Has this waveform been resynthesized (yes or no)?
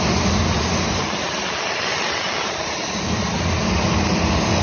no